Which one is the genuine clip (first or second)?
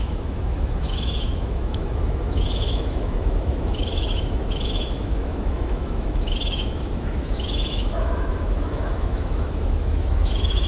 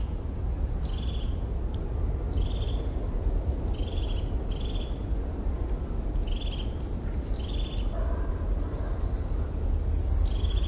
second